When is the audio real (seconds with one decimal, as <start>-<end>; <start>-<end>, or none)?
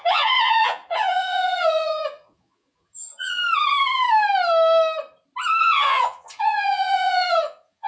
3.4-5.6